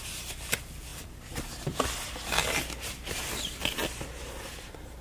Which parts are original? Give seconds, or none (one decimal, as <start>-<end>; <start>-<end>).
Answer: 0.0-5.0